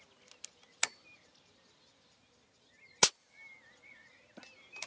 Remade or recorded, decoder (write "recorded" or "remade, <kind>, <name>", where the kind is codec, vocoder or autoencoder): recorded